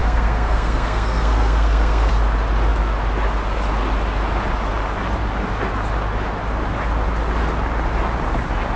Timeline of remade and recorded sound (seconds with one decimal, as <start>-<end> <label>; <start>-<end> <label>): 0.0-2.1 remade; 2.1-8.8 recorded